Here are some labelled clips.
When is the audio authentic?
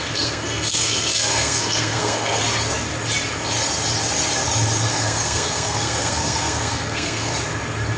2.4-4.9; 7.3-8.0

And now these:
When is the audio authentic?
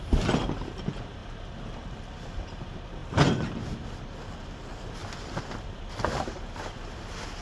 0.0-7.4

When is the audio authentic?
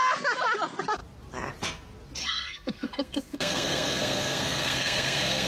0.0-2.2